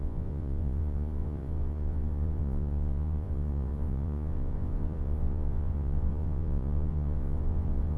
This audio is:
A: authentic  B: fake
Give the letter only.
B